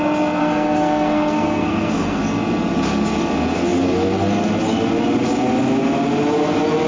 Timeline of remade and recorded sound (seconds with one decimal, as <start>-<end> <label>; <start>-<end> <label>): 0.0-0.4 recorded; 0.4-2.2 remade; 2.2-6.9 recorded